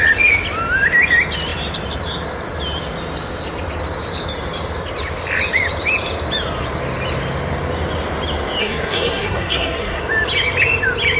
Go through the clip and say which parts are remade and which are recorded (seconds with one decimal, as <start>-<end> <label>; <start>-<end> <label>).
0.0-8.6 recorded; 8.6-10.0 remade; 10.0-11.2 recorded